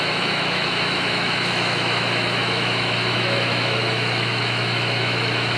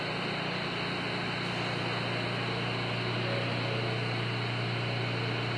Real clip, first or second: second